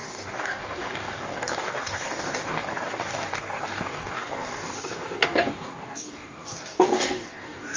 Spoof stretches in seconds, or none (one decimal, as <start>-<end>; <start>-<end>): 0.0-7.8